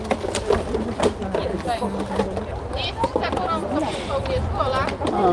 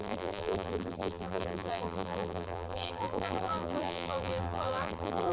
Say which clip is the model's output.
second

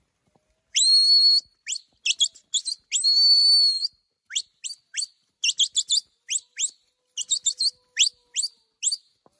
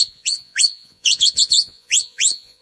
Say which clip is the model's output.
second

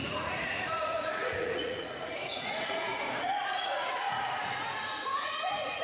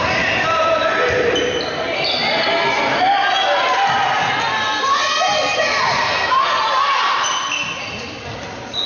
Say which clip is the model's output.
first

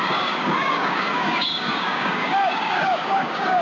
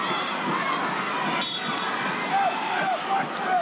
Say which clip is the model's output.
first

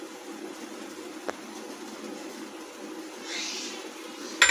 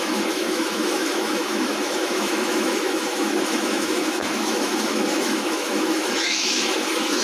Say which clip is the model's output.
second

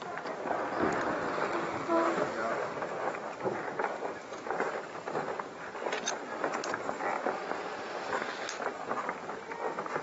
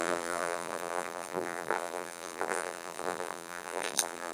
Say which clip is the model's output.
second